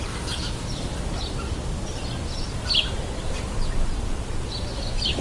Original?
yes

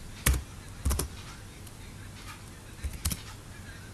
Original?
no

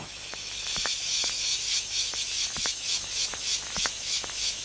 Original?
no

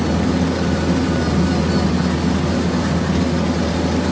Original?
yes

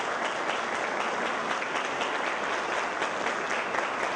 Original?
yes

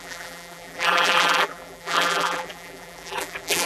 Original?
no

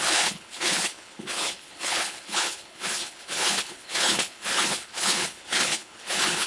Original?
no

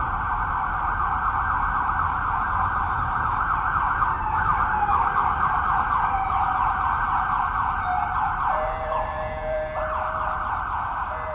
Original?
no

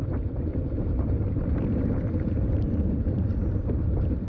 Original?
no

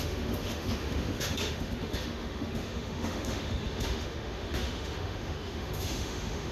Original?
no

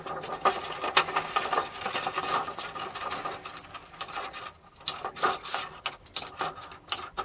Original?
yes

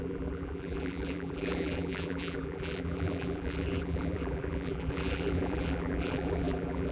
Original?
no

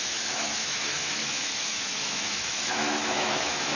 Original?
no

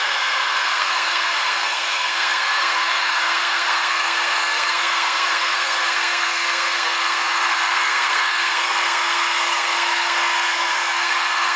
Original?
no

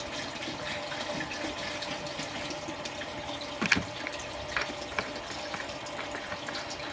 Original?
yes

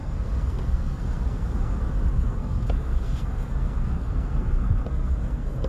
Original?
no